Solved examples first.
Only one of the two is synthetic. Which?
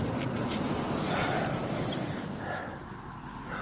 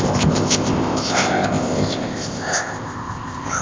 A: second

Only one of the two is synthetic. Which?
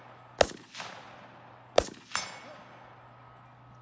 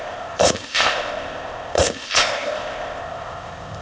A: second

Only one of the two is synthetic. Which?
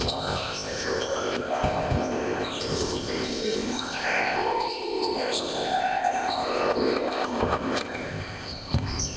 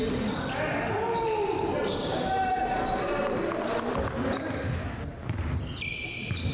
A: first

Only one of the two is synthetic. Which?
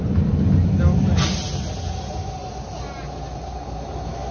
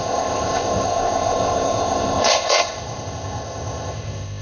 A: second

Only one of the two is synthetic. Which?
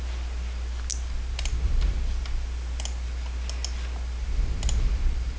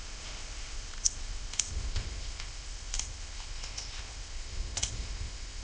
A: second